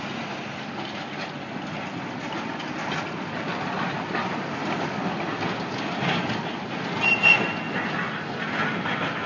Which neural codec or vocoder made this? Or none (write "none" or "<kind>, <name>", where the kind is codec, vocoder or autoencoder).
none